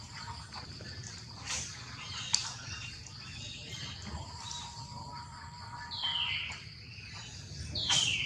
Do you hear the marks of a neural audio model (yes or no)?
no